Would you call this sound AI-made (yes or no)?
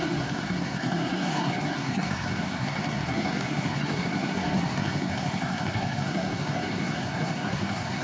yes